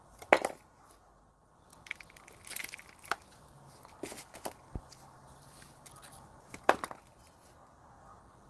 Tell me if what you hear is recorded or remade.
recorded